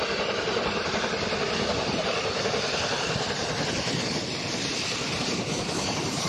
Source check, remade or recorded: remade